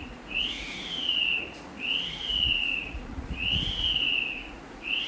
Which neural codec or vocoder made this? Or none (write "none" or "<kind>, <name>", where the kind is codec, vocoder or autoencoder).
vocoder, Vocos